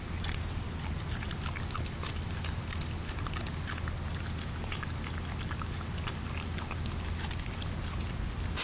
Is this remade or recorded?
recorded